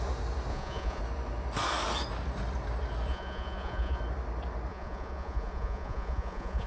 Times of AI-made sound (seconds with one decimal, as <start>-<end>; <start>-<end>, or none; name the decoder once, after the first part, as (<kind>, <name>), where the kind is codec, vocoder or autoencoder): 0.5-1.0 (vocoder, Vocos); 3.1-4.0; 4.7-6.7